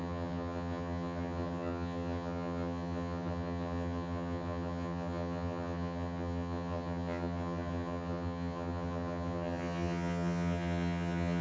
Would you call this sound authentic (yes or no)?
no